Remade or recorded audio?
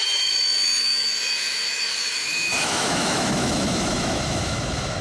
remade